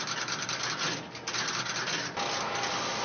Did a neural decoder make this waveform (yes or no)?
no